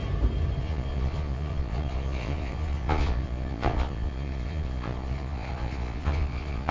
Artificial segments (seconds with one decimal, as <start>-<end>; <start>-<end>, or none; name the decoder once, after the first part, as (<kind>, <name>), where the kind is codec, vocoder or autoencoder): 0.6-6.7 (vocoder, Vocos)

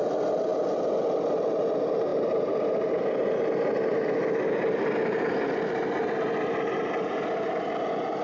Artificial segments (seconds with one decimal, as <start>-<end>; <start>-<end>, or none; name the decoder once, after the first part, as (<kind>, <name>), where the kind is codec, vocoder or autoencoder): none

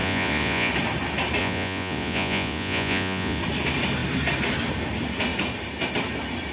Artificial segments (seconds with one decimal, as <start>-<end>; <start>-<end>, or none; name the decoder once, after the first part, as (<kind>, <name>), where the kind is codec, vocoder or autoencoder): 0.0-0.7 (vocoder, Vocos); 1.4-3.4

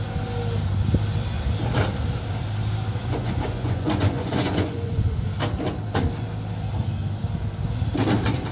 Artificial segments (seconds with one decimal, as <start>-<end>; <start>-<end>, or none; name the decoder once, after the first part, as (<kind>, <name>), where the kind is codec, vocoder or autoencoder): 3.0-5.2 (vocoder, Vocos)

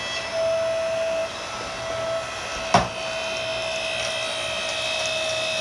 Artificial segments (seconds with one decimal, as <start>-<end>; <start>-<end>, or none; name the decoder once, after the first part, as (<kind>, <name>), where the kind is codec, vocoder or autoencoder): none

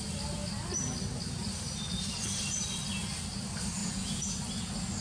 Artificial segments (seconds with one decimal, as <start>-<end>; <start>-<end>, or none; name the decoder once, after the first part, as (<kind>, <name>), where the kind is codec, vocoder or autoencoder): 3.8-4.4 (vocoder, Vocos)

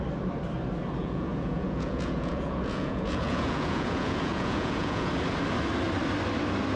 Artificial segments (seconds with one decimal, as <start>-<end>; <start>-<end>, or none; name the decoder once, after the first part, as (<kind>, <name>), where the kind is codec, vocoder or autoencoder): 1.0-5.1 (vocoder, Vocos)